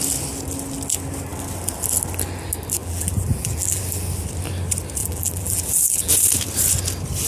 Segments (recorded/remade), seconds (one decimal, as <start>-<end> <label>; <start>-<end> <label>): 0.0-2.8 recorded; 2.8-3.8 remade; 3.8-5.0 recorded; 5.0-6.1 remade; 6.1-7.3 recorded